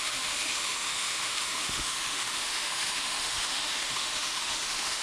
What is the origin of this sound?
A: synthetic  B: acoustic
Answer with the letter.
A